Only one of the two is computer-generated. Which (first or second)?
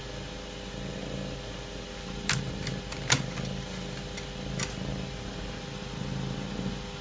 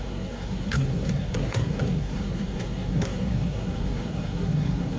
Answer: second